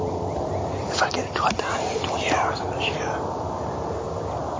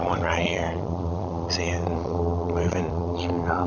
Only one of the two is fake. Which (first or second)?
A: second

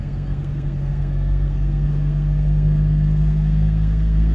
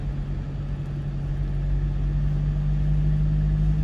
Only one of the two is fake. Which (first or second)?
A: first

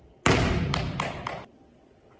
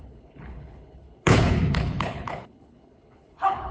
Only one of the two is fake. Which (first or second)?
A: second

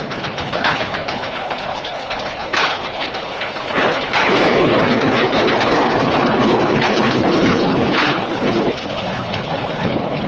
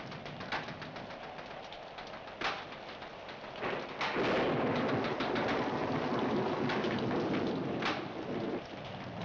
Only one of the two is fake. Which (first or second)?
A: first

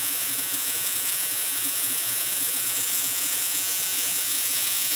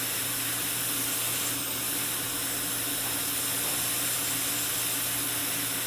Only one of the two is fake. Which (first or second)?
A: first